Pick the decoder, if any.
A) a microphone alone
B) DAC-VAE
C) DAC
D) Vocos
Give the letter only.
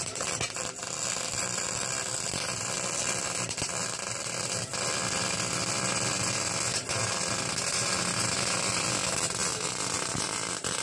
A